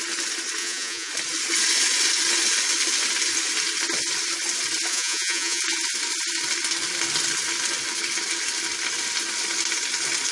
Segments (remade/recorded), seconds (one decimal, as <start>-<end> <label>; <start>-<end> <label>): 0.0-0.6 recorded; 0.6-1.1 remade; 1.1-4.9 recorded; 4.9-5.6 remade; 5.6-10.3 recorded